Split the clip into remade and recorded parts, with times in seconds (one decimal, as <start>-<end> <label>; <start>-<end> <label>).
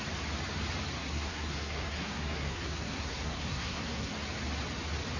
0.0-1.0 recorded; 1.0-4.1 remade; 4.1-5.2 recorded